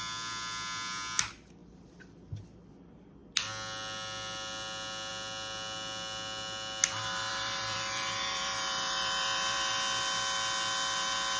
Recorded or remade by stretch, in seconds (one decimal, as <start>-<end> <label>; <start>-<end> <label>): 0.0-1.6 recorded; 1.6-2.1 remade; 2.1-7.3 recorded; 7.3-9.7 remade; 9.7-11.4 recorded